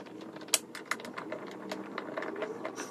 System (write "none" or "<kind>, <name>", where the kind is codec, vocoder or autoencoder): none